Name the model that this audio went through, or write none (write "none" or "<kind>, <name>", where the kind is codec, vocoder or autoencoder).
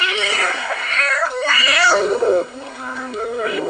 codec, SNAC